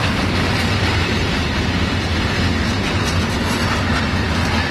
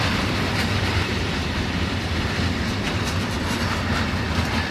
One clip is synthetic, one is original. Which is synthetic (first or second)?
second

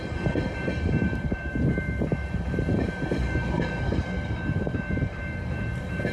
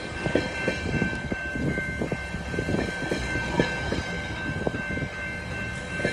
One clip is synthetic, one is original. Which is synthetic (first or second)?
first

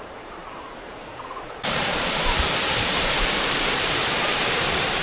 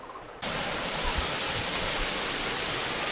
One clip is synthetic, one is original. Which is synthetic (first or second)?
first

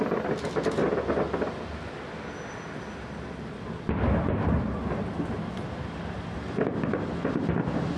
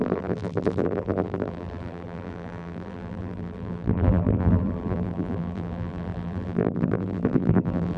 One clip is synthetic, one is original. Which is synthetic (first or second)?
second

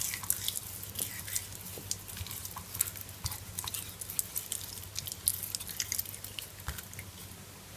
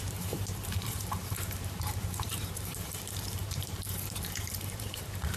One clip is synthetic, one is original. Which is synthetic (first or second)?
second